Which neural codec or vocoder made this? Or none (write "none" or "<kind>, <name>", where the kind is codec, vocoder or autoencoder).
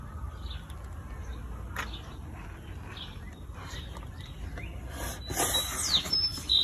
none